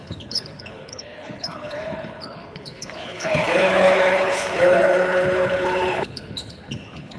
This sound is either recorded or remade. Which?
remade